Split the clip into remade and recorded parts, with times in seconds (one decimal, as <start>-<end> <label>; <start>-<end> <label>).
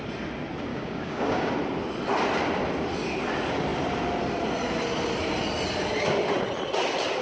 0.0-0.7 recorded; 0.7-1.5 remade; 1.5-7.2 recorded